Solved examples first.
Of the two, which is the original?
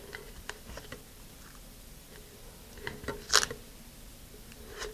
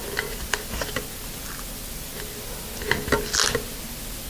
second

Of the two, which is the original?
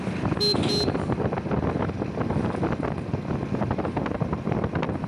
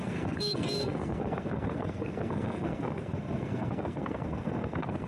first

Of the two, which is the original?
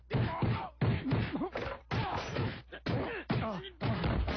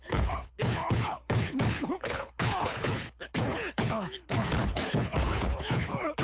first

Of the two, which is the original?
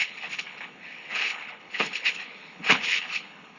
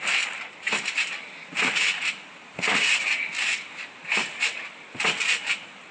second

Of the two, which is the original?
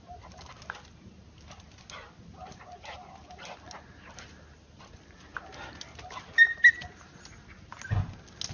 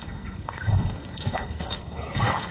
first